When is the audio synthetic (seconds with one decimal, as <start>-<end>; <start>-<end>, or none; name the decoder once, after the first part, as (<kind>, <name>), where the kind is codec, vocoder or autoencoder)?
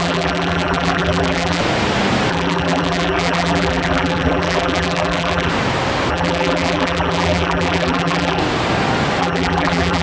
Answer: 0.0-1.6 (vocoder, BigVGAN v2); 2.3-5.5; 6.1-8.4; 9.2-10.0